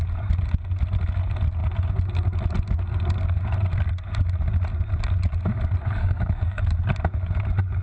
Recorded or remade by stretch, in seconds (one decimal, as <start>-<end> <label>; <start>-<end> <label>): 0.0-6.0 recorded; 6.0-6.6 remade; 6.6-7.8 recorded